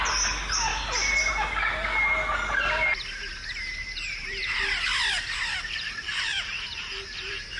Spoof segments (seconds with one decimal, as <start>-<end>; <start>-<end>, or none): 0.7-1.3; 3.6-4.6; 6.3-7.6